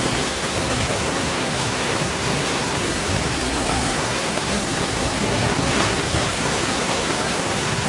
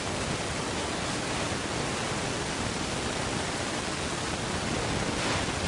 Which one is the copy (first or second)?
first